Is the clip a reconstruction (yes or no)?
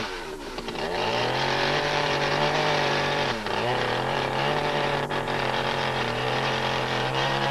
yes